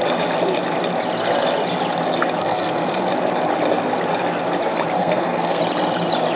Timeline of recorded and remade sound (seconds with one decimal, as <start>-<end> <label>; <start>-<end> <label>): 0.0-2.4 recorded; 2.4-3.0 remade; 3.0-5.0 recorded; 5.0-5.6 remade; 5.6-6.4 recorded

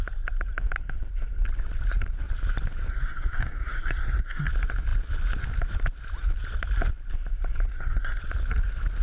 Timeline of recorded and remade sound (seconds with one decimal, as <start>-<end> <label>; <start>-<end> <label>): 0.0-2.9 recorded; 2.9-4.5 remade; 4.5-7.7 recorded; 7.7-8.2 remade; 8.2-9.0 recorded

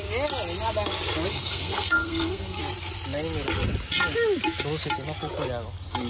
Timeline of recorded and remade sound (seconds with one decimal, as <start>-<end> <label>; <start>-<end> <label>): 0.0-1.3 recorded; 1.3-2.6 remade; 2.6-6.1 recorded

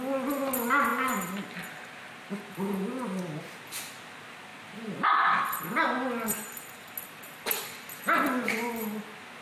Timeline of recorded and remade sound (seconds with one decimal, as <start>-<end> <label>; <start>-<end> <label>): 0.0-9.4 recorded

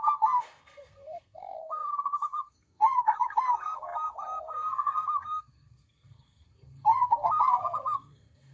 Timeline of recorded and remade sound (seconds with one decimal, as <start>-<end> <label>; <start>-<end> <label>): 0.0-8.5 remade